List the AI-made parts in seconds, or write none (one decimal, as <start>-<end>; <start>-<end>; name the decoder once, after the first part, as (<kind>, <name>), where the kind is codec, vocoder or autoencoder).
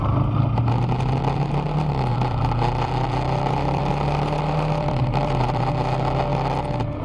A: 2.1-5.7 (vocoder, BigVGAN v2)